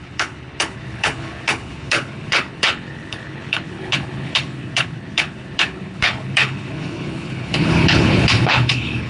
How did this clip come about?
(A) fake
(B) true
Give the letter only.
A